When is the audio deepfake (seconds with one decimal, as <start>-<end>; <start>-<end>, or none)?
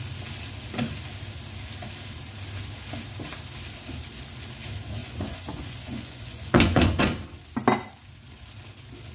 5.0-7.0